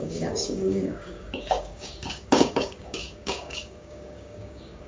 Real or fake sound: fake